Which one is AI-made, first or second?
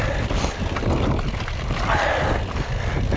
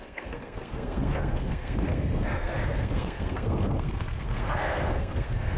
second